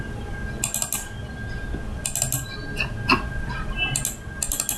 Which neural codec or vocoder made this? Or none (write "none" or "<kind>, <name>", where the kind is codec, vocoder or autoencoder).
none